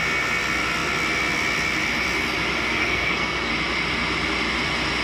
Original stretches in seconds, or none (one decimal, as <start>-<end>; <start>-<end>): 0.0-2.8; 3.5-5.0